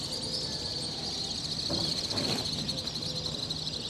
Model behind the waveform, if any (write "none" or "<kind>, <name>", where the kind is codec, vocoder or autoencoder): none